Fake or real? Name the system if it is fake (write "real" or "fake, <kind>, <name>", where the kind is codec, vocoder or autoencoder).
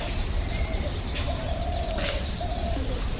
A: fake, vocoder, BigVGAN v2